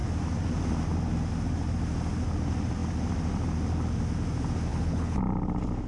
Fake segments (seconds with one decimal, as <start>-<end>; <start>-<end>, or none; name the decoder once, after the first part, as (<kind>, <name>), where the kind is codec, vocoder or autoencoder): 4.7-5.2 (codec, HILCodec)